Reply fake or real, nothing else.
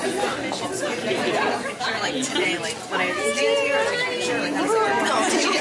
real